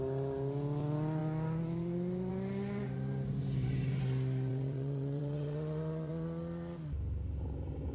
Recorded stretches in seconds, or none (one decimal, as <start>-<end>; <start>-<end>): 0.0-4.5; 6.1-7.9